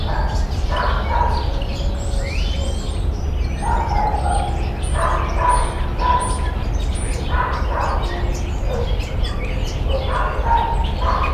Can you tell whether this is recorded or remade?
recorded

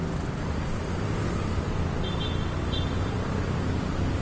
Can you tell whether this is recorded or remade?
recorded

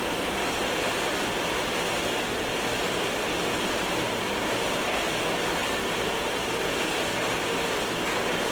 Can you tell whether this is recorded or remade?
recorded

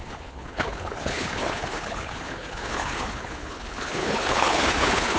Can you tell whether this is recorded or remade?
remade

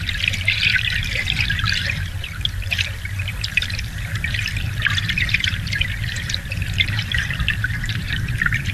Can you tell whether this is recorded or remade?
remade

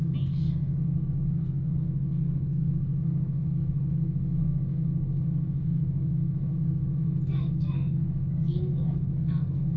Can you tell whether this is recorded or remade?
remade